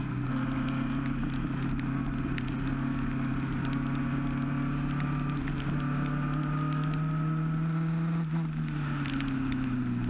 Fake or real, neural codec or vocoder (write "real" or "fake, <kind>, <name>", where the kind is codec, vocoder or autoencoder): real